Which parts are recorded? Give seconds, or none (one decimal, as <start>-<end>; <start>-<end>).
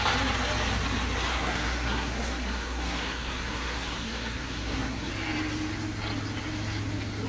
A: 0.0-1.3; 5.1-7.3